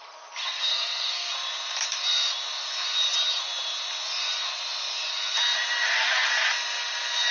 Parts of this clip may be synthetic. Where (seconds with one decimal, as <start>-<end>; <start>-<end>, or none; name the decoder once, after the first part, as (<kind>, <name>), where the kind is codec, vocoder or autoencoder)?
0.4-1.3 (codec, SNAC)